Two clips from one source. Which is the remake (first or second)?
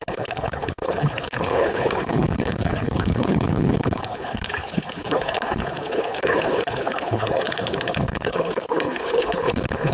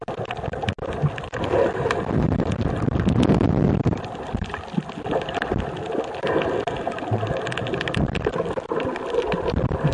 first